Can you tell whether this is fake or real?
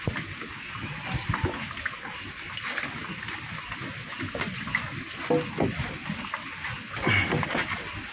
real